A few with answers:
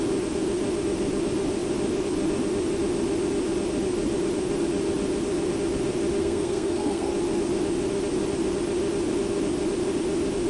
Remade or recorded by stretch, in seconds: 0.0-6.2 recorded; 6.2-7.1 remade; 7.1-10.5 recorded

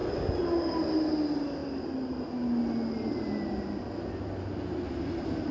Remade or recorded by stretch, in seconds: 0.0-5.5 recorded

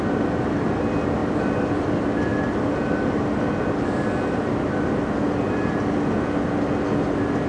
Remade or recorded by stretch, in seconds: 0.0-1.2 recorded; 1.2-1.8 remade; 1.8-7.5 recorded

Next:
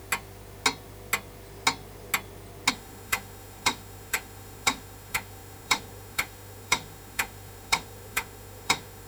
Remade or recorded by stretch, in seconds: 0.0-2.7 recorded; 2.7-9.1 remade

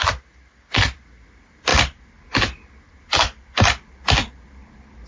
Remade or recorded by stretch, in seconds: 0.0-5.1 recorded

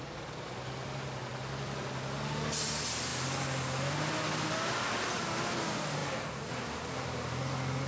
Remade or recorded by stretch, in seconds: 0.0-7.9 recorded

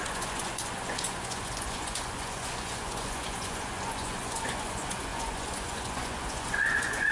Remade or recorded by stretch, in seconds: 0.0-7.1 remade

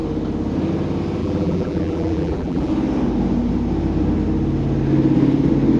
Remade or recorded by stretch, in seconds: 0.0-1.2 recorded; 1.2-2.7 remade; 2.7-5.8 recorded